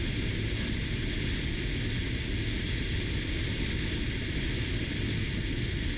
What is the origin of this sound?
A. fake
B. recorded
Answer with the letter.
B